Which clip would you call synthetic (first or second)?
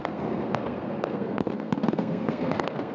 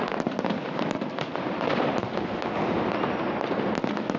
first